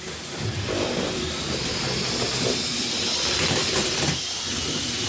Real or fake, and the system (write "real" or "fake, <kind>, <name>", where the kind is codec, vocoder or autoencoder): fake, vocoder, BigVGAN v2